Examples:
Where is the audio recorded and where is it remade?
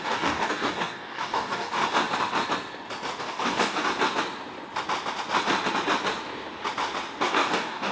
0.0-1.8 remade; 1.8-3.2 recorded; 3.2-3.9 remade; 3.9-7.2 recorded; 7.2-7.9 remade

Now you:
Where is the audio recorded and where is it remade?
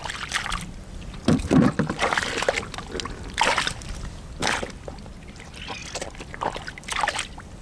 0.0-7.6 recorded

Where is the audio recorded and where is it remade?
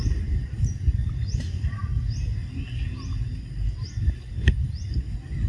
0.0-1.9 remade; 1.9-5.5 recorded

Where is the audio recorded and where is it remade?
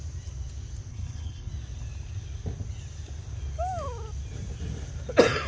0.0-0.9 recorded; 0.9-1.5 remade; 1.5-5.5 recorded